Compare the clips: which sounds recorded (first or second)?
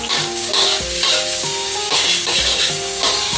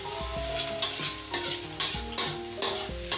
second